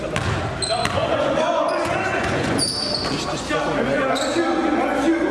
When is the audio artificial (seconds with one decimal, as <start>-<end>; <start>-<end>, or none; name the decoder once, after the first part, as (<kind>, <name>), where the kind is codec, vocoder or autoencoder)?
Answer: 1.0-2.6 (vocoder, Vocos)